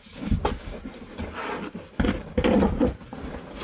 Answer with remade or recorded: recorded